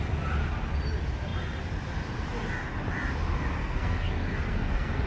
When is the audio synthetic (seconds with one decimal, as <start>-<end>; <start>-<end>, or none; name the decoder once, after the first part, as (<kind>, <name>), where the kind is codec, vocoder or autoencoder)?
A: 3.6-5.1 (codec, SNAC)